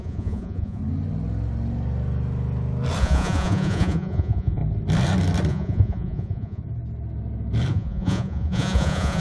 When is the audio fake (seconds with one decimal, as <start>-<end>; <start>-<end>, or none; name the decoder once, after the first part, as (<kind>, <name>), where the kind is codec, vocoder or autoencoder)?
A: 0.0-0.8 (vocoder, Vocos); 3.0-4.6; 5.5-6.6; 7.7-9.2